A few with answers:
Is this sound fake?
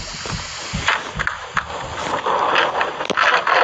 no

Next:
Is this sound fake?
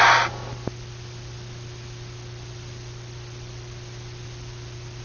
no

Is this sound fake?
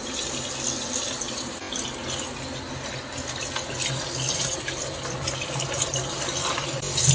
no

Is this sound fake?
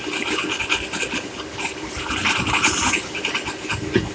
no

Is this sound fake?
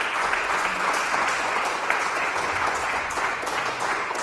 yes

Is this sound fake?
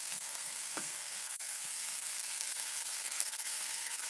yes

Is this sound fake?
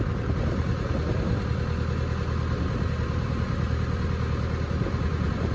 no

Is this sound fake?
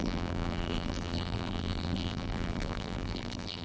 yes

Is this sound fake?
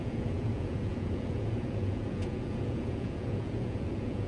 yes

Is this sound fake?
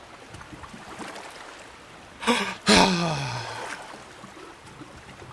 no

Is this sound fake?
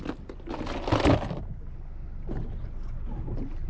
no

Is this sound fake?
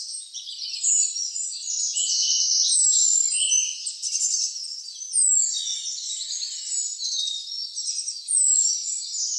no